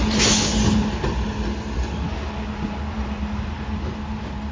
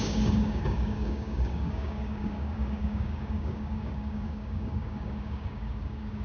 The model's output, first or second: second